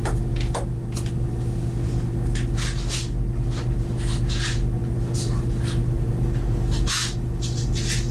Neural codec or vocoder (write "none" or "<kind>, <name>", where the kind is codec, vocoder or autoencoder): none